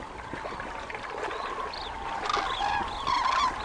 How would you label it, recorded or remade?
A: recorded